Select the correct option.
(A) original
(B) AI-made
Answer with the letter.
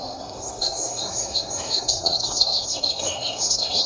B